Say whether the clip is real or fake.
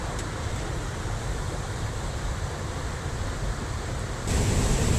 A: fake